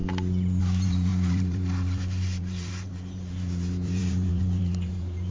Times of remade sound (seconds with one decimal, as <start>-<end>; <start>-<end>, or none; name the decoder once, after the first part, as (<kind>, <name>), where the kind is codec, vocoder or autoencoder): 0.6-5.3 (vocoder, BigVGAN v2)